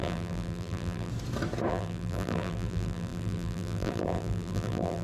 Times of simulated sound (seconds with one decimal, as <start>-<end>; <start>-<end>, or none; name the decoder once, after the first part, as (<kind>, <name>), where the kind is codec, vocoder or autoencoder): 0.0-1.1 (vocoder, BigVGAN v2); 1.7-5.0